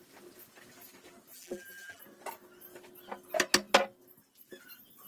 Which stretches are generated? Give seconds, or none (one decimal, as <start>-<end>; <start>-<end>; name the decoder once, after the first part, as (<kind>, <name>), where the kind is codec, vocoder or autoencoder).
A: 1.3-2.0 (vocoder, BigVGAN v2)